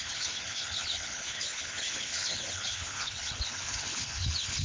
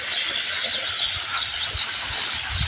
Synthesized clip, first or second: first